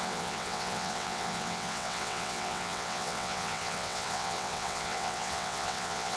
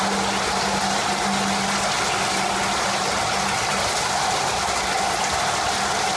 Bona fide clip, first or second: second